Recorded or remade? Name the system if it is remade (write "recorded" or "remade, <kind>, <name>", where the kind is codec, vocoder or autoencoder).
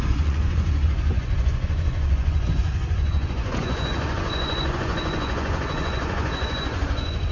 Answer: remade, vocoder, Vocos